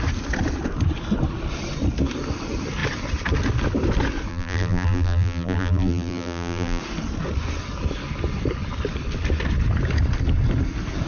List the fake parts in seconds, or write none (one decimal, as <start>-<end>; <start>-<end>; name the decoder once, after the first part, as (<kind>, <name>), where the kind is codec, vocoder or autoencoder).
4.3-6.8 (vocoder, BigVGAN v2)